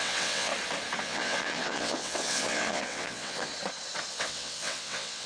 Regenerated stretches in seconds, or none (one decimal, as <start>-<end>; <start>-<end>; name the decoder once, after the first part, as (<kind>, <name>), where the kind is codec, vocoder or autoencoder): 0.0-0.5 (vocoder, WaveNeXt); 1.0-3.5; 4.1-5.3